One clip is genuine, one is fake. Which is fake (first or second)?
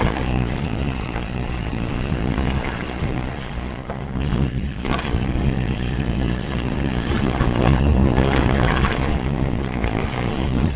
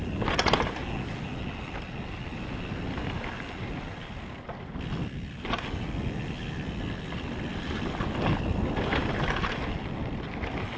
first